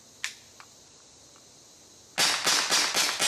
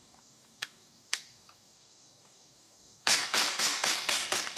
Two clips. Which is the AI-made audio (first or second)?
second